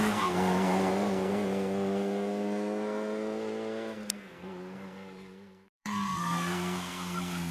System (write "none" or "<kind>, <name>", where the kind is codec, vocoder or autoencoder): codec, SNAC